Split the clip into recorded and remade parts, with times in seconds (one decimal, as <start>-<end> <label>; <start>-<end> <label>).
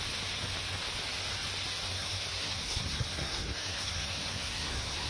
0.0-1.9 recorded; 1.9-5.1 remade